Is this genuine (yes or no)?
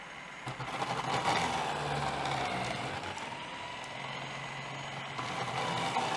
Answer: yes